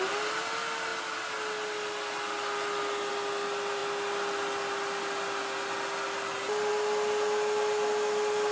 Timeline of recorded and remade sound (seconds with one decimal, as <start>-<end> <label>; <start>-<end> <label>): 0.0-8.5 recorded